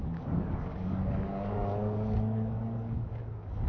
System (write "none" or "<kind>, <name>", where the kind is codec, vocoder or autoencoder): codec, DAC